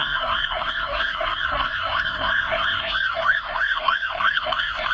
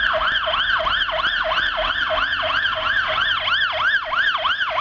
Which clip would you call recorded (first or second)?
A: second